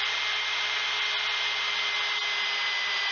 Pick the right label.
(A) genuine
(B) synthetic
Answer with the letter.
A